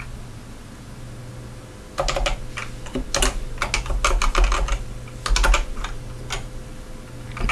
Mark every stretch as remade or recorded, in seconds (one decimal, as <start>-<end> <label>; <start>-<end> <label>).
0.0-7.5 recorded